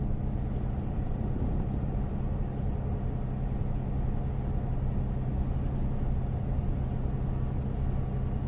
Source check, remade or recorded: recorded